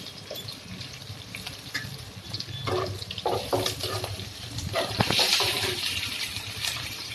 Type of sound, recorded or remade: remade